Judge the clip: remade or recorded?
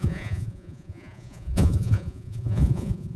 remade